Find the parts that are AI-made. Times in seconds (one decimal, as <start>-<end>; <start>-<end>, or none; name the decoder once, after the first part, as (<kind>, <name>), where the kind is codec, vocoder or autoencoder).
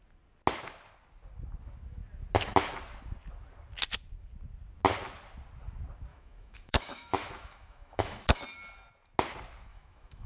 6.1-8.4 (autoencoder, DAC-VAE); 9.7-10.3